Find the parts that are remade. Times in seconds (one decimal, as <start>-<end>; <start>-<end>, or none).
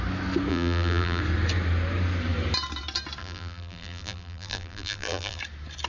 0.5-1.2; 3.2-5.4